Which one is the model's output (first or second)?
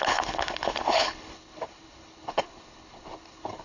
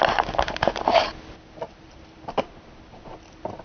first